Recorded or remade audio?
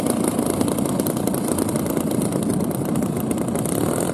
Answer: recorded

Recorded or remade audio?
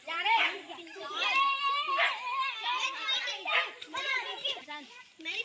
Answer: remade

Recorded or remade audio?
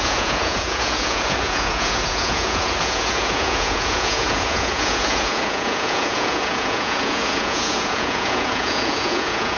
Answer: remade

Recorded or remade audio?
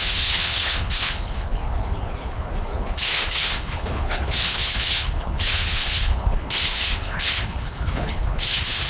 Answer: remade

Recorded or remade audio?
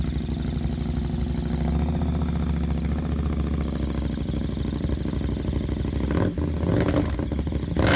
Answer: recorded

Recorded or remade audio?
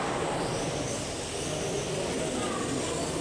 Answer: recorded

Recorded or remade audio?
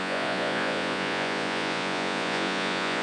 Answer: remade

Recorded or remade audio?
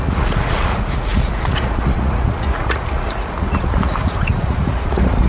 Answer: remade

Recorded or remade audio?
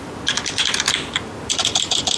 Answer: recorded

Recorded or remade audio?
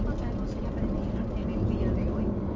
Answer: recorded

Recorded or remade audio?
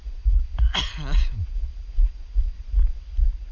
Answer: recorded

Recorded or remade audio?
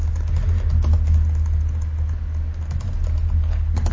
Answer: recorded